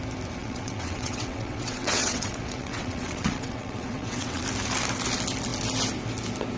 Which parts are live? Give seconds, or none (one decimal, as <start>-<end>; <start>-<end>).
0.0-0.4; 4.4-6.6

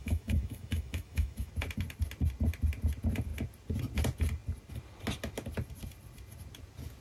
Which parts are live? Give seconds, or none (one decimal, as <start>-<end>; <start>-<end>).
1.5-7.0

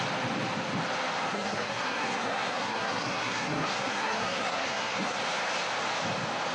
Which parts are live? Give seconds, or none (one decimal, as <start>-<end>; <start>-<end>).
0.0-1.3; 5.2-6.5

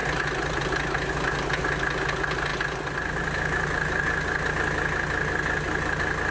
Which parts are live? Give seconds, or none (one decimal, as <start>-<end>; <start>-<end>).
0.0-6.3

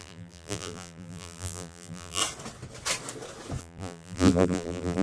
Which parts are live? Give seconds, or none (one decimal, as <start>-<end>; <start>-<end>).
2.2-3.6